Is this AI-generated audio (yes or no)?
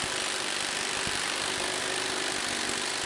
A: no